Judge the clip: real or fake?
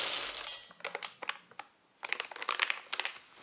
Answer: real